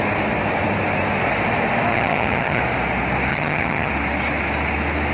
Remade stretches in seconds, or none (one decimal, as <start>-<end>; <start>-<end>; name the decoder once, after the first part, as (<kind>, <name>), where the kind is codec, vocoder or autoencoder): 1.9-2.6 (vocoder, HiFi-GAN); 3.3-3.9